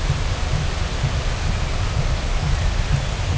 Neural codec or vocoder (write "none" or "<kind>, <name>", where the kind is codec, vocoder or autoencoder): none